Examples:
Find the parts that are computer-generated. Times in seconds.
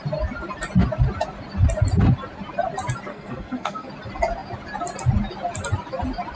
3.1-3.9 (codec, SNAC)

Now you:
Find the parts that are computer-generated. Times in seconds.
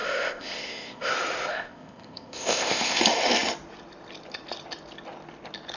0.0-1.1 (codec, ZipCodec); 1.5-3.0